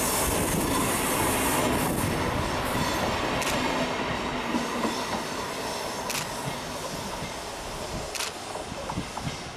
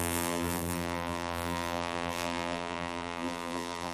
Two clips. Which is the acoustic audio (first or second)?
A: first